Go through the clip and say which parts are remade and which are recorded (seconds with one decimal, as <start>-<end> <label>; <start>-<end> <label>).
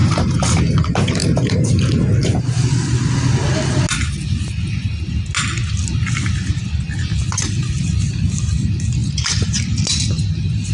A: 0.0-0.6 remade; 0.6-1.2 recorded; 1.2-1.8 remade; 1.8-9.0 recorded; 9.0-9.6 remade; 9.6-10.7 recorded